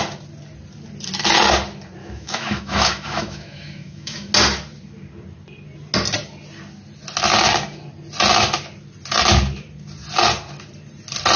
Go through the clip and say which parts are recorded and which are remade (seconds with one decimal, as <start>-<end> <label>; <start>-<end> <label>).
0.0-2.0 recorded; 2.0-4.3 remade; 4.3-11.4 recorded